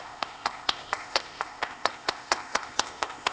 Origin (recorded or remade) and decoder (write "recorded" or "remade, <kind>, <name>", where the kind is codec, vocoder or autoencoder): remade, codec, ZipCodec